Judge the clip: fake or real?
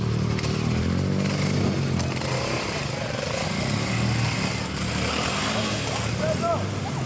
real